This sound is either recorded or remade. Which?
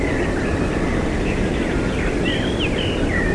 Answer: recorded